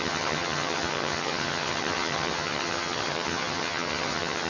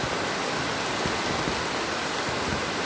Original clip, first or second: second